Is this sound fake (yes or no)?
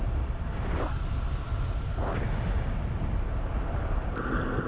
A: no